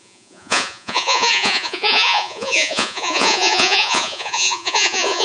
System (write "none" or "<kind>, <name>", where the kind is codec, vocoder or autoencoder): vocoder, Vocos